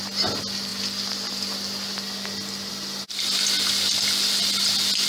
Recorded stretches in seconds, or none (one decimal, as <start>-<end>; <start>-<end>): 0.0-5.1